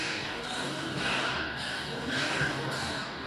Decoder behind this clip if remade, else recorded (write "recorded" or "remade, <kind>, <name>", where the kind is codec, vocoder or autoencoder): remade, codec, DAC